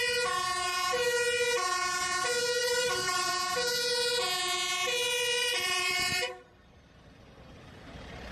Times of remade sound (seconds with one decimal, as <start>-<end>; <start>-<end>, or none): 2.6-3.3; 5.4-8.3